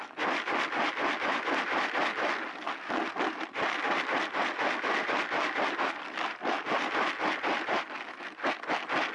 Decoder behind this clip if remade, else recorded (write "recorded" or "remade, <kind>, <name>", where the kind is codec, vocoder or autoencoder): recorded